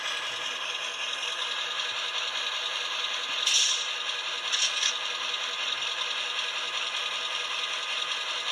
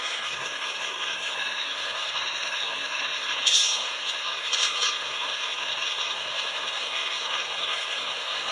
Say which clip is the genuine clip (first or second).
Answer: first